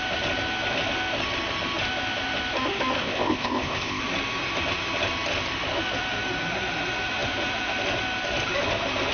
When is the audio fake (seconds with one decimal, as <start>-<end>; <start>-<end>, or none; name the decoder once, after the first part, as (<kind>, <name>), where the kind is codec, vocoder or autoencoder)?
3.0-4.0 (codec, ZipCodec)